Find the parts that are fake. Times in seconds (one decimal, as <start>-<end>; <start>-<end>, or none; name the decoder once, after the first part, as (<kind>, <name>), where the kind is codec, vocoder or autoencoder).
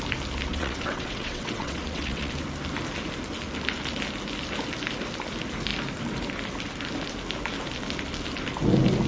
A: 0.5-2.3 (vocoder, WaveNeXt)